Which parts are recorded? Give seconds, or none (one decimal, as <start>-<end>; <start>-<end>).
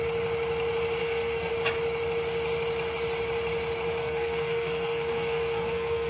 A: 0.0-1.0; 1.5-4.0